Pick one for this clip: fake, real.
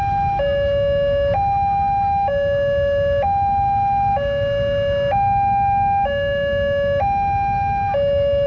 real